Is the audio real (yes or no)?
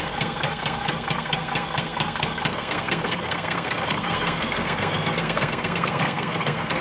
no